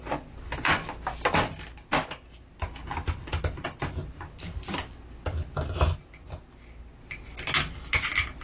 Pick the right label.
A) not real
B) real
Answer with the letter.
B